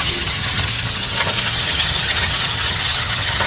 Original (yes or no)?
no